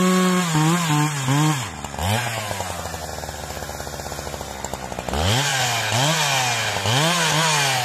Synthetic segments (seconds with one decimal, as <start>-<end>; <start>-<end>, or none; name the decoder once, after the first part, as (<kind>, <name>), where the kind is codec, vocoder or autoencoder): none